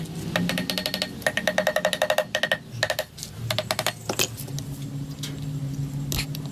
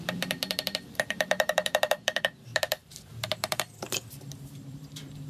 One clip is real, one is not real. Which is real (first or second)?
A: first